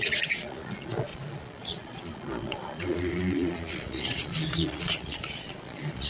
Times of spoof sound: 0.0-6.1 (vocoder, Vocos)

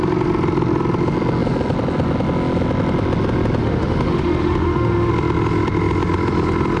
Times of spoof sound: 3.6-5.1 (autoencoder, DAC-VAE)

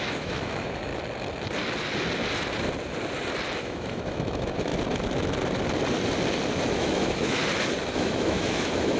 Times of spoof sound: 0.0-0.9 (autoencoder, DAC-VAE); 3.6-4.7; 6.7-7.4; 7.9-9.0

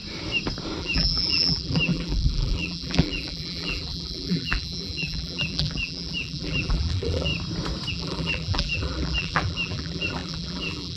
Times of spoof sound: 0.8-7.3 (vocoder, BigVGAN v2); 7.9-11.0

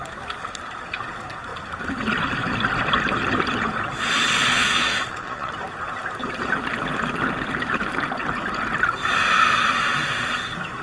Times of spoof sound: 4.5-5.5 (vocoder, Vocos)